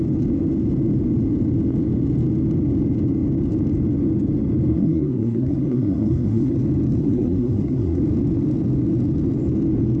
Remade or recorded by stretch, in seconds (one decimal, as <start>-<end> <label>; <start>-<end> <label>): 0.0-4.7 recorded; 4.7-6.5 remade; 6.5-7.0 recorded; 7.0-8.0 remade; 8.0-10.0 recorded